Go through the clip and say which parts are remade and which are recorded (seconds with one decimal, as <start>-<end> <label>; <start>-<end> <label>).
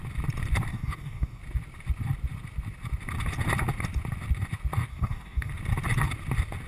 0.0-0.7 recorded; 0.7-1.4 remade; 1.4-4.9 recorded; 4.9-5.5 remade; 5.5-6.7 recorded